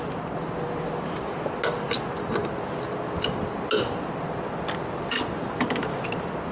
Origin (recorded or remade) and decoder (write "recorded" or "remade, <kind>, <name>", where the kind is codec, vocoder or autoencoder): recorded